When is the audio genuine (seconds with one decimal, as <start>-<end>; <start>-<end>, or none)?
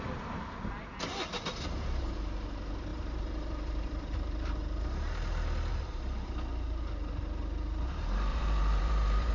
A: 0.0-2.9; 4.6-5.7; 6.8-8.3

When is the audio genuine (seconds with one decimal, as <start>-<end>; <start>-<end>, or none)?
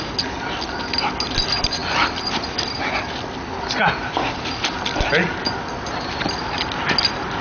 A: 0.0-1.8; 2.8-7.4